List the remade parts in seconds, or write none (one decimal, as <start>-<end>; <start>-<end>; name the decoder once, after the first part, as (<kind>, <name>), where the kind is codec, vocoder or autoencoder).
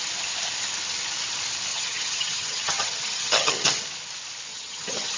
1.7-3.8 (vocoder, HiFi-GAN); 4.5-5.2